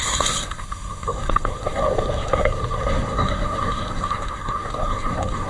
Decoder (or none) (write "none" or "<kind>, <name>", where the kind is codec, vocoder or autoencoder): codec, SNAC